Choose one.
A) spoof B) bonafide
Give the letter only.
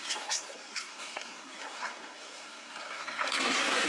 A